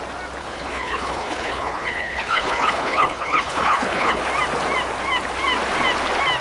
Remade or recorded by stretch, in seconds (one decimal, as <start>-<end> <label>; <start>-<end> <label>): 0.0-0.4 recorded; 0.4-4.2 remade; 4.2-6.4 recorded